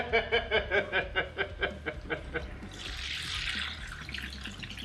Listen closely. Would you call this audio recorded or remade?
recorded